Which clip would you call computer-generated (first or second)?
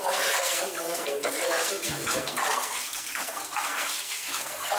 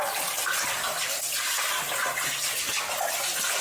first